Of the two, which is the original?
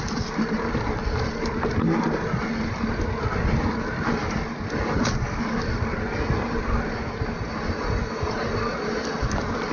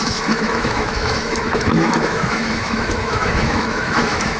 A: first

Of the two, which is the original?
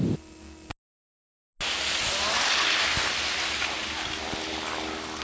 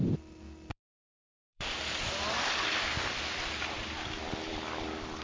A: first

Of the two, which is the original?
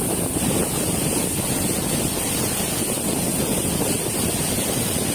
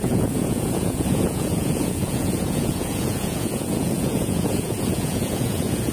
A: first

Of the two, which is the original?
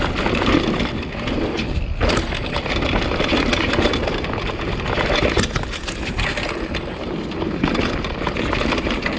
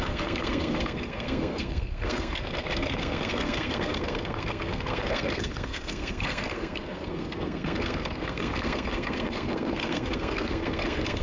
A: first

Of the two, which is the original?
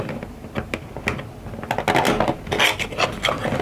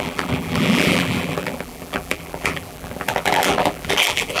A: first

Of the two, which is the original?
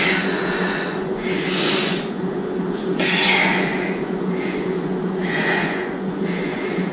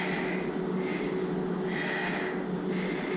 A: second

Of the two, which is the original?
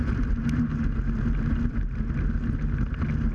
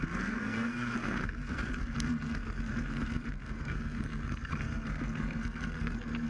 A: first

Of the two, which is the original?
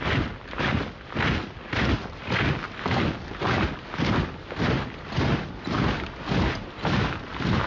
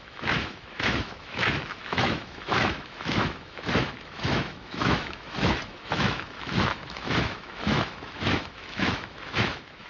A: first